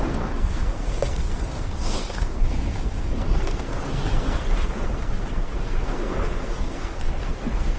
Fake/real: fake